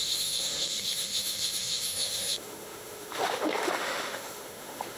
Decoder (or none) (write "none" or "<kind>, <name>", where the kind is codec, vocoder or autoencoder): autoencoder, DAC-VAE